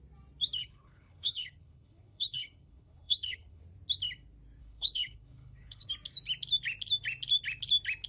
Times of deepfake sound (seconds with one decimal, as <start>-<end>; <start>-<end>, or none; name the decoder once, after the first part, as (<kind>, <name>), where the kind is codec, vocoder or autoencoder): 0.6-3.6 (codec, HILCodec); 4.6-5.9